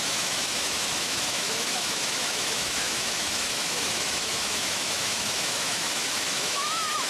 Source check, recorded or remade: remade